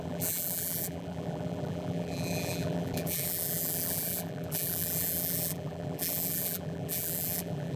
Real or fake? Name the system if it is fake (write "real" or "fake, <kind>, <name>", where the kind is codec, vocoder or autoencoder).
fake, vocoder, BigVGAN v2